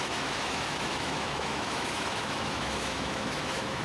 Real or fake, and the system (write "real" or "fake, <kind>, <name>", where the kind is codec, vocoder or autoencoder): fake, autoencoder, DAC-VAE